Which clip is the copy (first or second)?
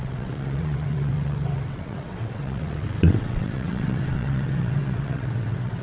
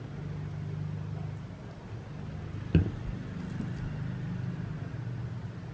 first